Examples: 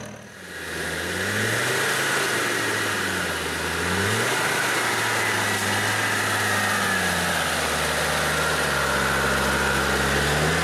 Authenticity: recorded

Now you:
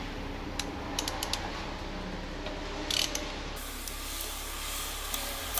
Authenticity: remade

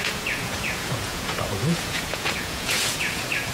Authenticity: remade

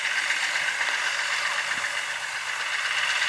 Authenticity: recorded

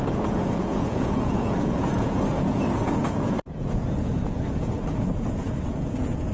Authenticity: remade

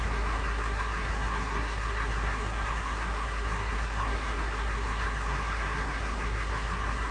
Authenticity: remade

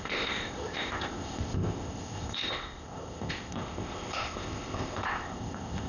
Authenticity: remade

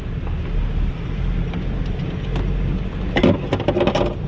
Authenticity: recorded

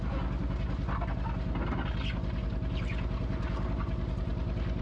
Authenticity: recorded